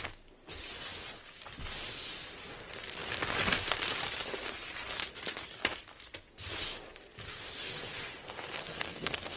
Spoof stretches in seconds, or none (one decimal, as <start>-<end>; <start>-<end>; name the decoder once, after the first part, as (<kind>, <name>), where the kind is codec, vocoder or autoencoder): 8.6-9.4 (codec, SNAC)